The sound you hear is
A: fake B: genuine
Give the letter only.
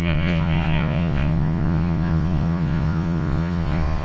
A